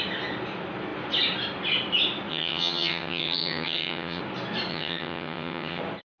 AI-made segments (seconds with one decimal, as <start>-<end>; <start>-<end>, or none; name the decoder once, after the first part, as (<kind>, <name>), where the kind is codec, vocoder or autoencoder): 2.3-4.2 (vocoder, HiFi-GAN); 4.7-5.8